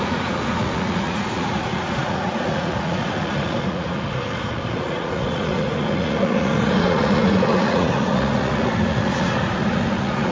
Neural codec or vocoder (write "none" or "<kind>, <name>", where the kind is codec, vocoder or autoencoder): vocoder, Vocos